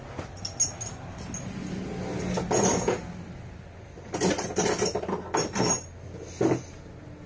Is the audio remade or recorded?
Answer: recorded